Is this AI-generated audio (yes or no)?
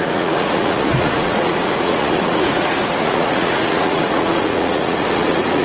yes